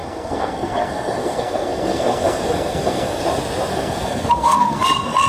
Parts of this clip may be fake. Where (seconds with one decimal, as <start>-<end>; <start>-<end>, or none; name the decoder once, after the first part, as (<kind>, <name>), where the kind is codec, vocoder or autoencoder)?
0.0-3.2 (codec, SNAC); 3.7-5.3